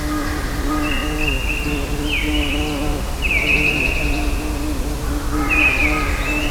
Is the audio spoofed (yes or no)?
no